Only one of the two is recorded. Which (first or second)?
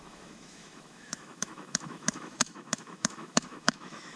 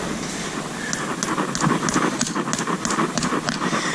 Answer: second